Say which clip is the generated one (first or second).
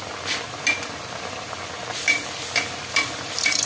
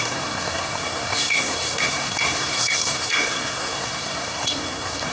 second